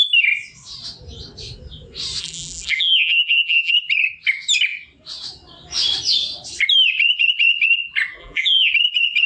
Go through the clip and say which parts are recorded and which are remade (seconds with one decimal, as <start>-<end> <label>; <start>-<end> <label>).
0.0-2.2 recorded; 2.2-3.7 remade; 3.7-8.2 recorded; 8.2-8.7 remade; 8.7-9.3 recorded